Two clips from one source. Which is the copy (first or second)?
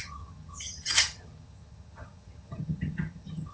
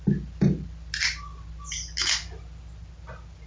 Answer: first